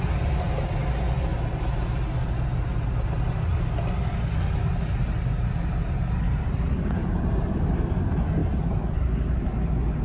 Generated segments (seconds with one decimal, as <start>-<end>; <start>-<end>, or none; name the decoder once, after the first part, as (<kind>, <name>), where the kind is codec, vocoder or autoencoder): none